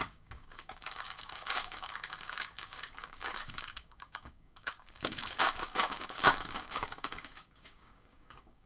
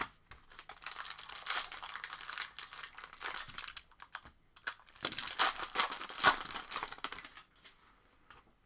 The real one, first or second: second